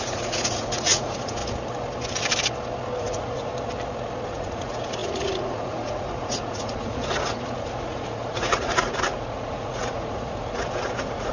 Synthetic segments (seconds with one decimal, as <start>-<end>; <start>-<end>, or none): 0.0-1.4; 3.0-3.5; 4.3-11.3